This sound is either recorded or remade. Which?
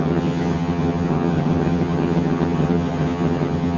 remade